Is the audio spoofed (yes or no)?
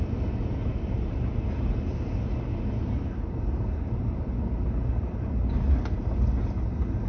no